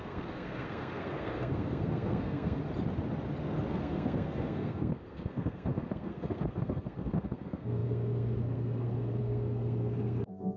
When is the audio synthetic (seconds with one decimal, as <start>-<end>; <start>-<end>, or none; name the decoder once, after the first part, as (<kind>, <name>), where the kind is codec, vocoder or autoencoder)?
0.0-2.6 (codec, SNAC); 3.7-10.6